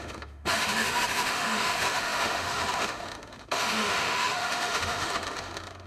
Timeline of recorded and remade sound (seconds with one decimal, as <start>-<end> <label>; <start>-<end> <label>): 0.0-5.9 remade